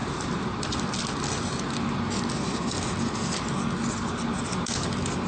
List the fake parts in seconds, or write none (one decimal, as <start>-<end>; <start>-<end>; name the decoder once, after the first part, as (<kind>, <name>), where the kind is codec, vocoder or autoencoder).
0.0-0.6 (vocoder, BigVGAN v2)